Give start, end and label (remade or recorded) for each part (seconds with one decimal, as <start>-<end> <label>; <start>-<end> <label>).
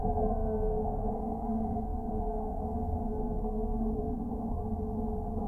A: 0.0-4.6 remade; 4.6-5.5 recorded